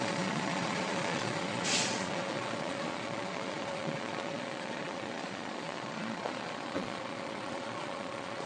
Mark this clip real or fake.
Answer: fake